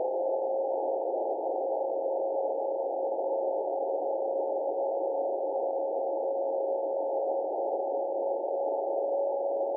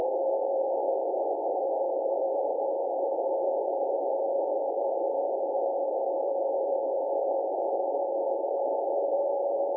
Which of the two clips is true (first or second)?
first